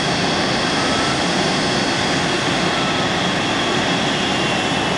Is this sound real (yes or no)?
yes